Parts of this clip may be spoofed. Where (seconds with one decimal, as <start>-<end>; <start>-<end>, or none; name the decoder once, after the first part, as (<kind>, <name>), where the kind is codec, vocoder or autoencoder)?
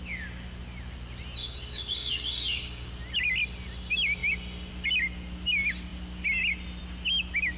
1.4-2.9 (codec, DAC)